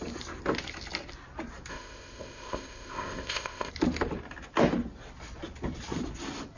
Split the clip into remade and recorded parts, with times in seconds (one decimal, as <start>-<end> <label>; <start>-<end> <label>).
0.0-1.7 recorded; 1.7-3.7 remade; 3.7-6.6 recorded